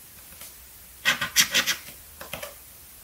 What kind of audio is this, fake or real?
real